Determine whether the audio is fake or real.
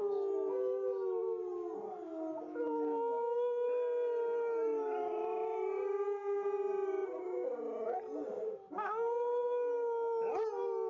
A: real